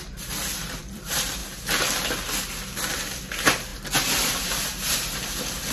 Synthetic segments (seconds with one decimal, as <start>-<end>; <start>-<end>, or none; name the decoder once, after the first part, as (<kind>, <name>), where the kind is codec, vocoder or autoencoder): 0.0-1.4 (vocoder, BigVGAN v2); 2.9-5.7